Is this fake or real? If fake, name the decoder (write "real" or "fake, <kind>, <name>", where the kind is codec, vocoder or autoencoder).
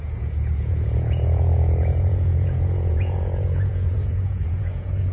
fake, vocoder, Vocos